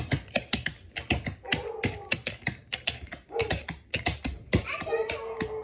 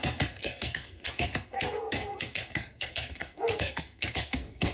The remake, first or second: second